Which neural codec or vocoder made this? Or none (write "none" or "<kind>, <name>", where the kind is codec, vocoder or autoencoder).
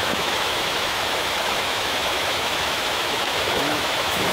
autoencoder, DAC-VAE